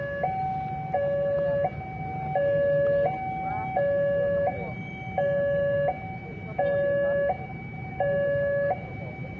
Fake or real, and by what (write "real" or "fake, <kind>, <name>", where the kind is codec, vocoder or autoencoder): real